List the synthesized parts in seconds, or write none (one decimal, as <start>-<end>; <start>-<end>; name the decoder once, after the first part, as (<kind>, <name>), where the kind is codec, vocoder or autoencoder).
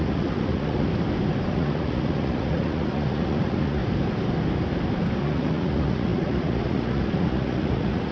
0.0-0.9 (vocoder, Vocos); 1.5-3.8; 5.2-8.1